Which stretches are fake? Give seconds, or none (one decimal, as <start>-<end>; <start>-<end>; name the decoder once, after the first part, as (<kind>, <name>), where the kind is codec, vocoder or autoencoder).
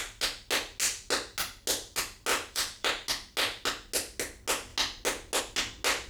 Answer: 2.3-2.9 (vocoder, BigVGAN v2)